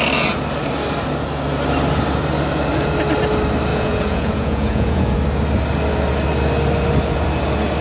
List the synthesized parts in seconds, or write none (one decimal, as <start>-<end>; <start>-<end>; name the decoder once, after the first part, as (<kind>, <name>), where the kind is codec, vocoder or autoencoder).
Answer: 3.7-5.2 (vocoder, Vocos)